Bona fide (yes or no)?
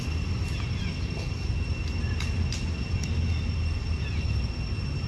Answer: yes